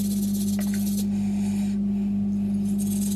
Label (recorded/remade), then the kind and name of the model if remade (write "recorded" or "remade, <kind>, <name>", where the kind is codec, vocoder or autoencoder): recorded